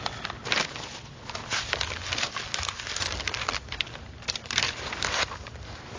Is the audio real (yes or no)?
yes